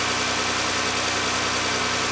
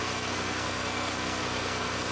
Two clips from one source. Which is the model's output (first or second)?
second